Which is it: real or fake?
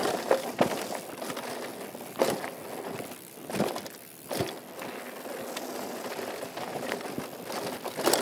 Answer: real